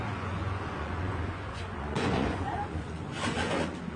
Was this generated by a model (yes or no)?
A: yes